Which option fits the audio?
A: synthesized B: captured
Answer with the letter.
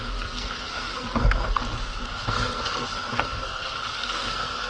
A